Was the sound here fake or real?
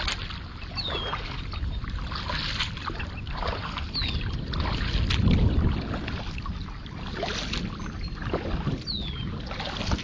real